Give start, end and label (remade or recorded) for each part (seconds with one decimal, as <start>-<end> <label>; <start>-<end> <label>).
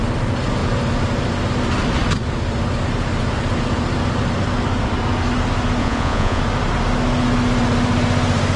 0.0-5.8 recorded; 5.8-6.4 remade; 6.4-8.6 recorded